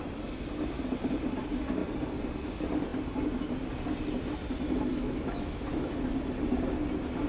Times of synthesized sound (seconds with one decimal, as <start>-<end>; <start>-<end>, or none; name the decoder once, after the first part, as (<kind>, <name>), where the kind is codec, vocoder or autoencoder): 4.9-5.9 (autoencoder, DAC-VAE)